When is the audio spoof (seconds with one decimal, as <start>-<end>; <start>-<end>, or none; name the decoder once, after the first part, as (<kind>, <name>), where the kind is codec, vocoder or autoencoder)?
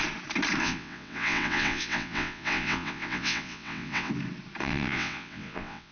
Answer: 0.6-4.1 (vocoder, WaveNeXt); 4.6-5.9